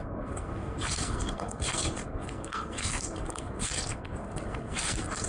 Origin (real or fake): fake